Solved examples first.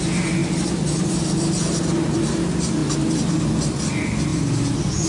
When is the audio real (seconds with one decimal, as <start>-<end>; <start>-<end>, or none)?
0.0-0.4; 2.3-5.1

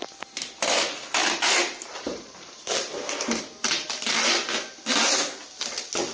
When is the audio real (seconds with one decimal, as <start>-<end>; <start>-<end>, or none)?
0.0-1.2; 3.4-6.1

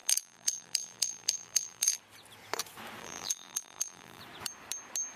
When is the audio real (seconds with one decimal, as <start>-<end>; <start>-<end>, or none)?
2.0-3.0; 4.2-5.2

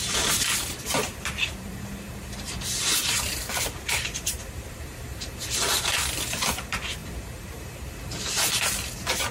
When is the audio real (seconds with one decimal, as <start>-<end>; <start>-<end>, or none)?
none